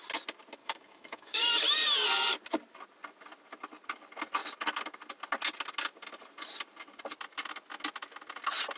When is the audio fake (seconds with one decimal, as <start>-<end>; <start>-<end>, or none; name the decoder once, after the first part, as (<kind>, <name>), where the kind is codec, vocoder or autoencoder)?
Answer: 0.6-1.5 (codec, DAC)